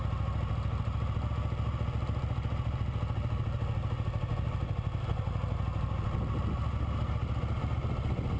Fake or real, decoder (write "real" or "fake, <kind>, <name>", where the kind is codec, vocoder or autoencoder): real